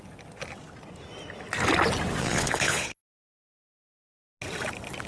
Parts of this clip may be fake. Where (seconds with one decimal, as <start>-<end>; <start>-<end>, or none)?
2.2-3.0